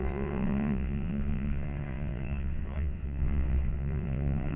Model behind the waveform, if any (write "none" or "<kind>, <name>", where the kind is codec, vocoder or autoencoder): vocoder, WaveNeXt